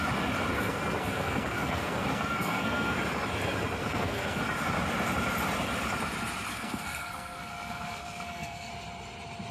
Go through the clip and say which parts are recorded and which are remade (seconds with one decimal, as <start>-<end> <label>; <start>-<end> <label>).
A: 0.0-0.5 recorded; 0.5-3.0 remade; 3.0-3.8 recorded; 3.8-4.4 remade; 4.4-6.5 recorded; 6.5-8.7 remade; 8.7-9.5 recorded